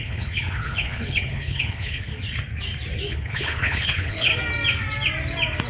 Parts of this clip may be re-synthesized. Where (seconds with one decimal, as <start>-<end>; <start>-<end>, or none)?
0.0-2.1; 3.1-4.3